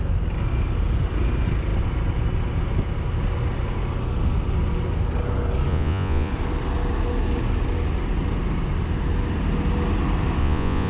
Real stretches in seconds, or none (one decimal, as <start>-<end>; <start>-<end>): 0.0-5.7; 6.3-10.4